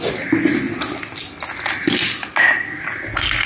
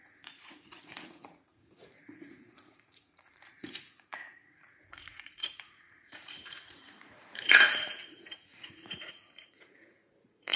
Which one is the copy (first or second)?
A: second